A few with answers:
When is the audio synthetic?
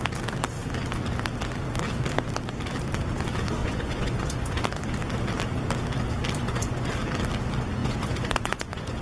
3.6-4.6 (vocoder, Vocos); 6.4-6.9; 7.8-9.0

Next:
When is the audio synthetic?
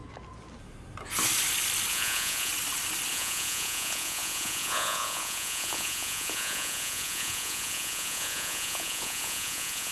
1.9-2.5 (vocoder, Vocos); 3.1-9.9